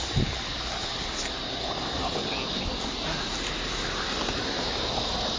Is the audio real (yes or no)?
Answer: yes